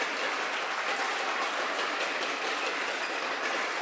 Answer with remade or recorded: recorded